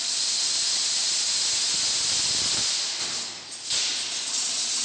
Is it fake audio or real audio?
real